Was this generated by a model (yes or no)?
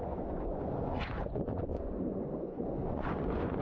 yes